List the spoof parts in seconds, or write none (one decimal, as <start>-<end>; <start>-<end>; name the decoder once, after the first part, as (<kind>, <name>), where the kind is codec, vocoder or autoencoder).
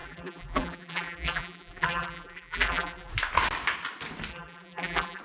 0.0-3.1 (vocoder, BigVGAN v2); 4.3-5.2